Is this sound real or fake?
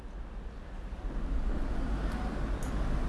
real